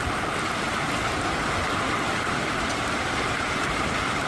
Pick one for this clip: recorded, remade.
recorded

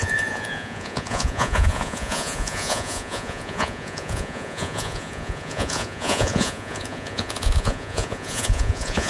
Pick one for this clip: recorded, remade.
remade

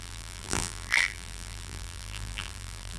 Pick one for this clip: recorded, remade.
remade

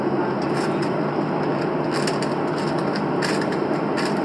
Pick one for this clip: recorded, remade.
remade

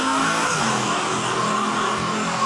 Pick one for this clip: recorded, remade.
remade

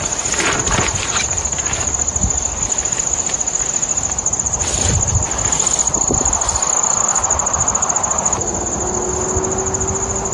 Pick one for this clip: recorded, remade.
recorded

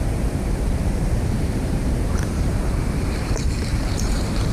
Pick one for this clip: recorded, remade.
remade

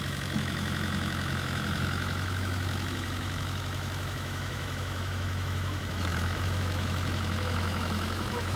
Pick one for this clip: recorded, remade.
remade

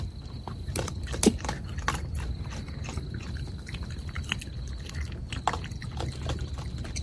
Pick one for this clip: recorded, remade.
recorded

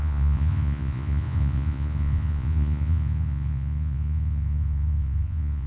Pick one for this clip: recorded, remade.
remade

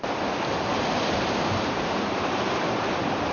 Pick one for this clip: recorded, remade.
remade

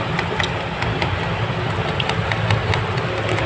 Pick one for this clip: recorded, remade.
recorded